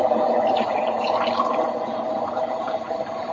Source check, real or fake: real